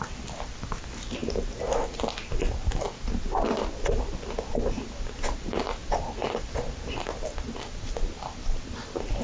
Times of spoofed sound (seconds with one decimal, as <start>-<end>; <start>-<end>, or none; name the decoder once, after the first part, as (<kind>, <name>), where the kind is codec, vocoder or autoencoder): none